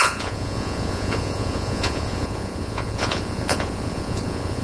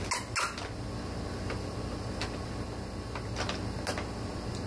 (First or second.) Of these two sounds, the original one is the second